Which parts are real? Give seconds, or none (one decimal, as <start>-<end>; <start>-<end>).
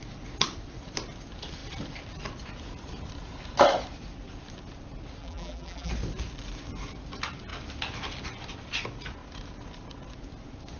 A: 0.0-5.2; 5.9-10.8